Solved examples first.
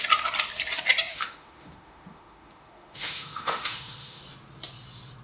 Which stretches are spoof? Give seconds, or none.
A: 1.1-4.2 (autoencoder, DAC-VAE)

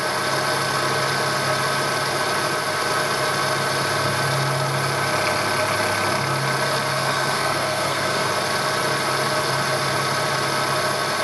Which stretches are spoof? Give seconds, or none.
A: 6.9-8.3 (codec, SNAC)

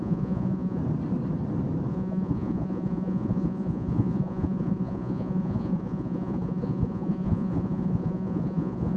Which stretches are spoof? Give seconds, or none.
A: 0.0-0.8 (vocoder, Vocos); 1.9-9.0

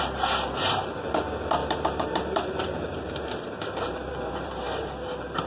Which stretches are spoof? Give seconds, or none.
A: 1.6-4.9 (vocoder, BigVGAN v2)

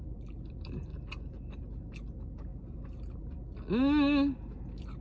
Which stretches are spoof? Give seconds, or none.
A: none

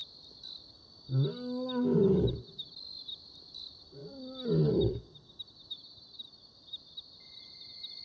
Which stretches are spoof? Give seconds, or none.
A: none

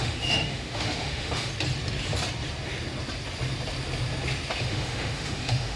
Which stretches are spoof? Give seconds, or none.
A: 0.0-1.5 (autoencoder, DAC-VAE); 4.6-5.8